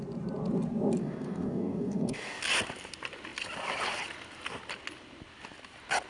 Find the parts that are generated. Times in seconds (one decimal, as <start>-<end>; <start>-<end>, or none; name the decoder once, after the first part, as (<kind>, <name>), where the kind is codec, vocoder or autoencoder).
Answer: 1.0-2.4 (codec, DAC)